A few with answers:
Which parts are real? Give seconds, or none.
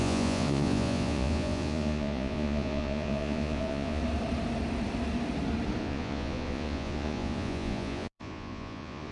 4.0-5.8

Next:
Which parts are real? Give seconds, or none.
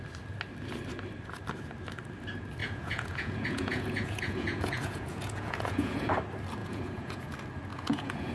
0.0-2.6; 6.1-6.6; 7.3-7.7